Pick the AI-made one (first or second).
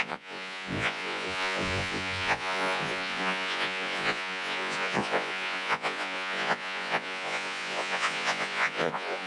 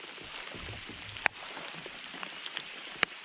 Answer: first